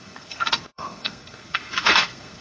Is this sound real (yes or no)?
no